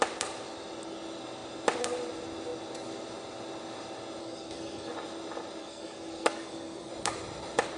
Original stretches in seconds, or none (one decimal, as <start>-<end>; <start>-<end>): 0.0-4.2; 4.9-5.6; 6.9-7.8